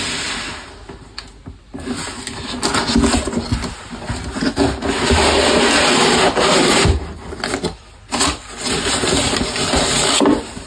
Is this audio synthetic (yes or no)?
no